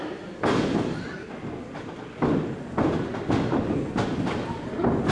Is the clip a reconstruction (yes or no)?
no